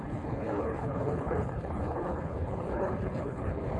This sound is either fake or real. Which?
fake